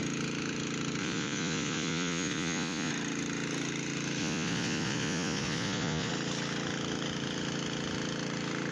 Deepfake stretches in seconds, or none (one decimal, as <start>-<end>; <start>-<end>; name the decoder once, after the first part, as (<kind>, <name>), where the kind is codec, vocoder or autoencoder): 1.0-2.9 (vocoder, Vocos); 4.2-6.1